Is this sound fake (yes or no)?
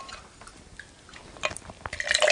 no